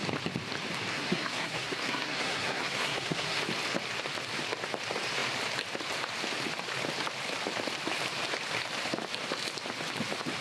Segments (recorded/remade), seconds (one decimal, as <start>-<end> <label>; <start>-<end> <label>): 0.0-0.9 recorded; 0.9-3.4 remade; 3.4-10.4 recorded